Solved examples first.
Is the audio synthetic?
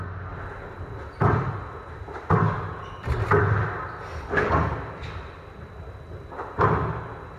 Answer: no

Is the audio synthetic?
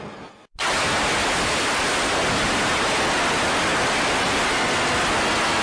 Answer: no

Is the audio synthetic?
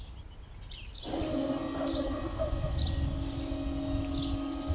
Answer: no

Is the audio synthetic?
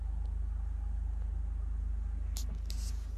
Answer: no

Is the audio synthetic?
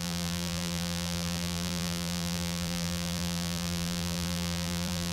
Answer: yes